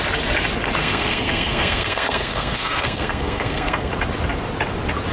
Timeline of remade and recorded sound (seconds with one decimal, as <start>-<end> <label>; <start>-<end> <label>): 0.0-0.8 recorded; 0.8-3.9 remade; 3.9-5.1 recorded